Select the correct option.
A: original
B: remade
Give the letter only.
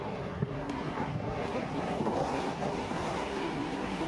B